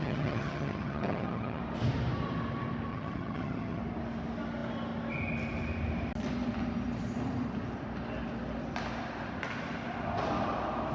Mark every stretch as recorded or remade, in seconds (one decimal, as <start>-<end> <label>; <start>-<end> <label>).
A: 0.0-1.6 remade; 1.6-2.9 recorded; 2.9-3.8 remade; 3.8-10.9 recorded